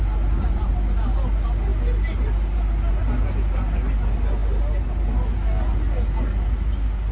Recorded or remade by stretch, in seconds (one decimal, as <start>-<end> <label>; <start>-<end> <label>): 0.0-7.1 recorded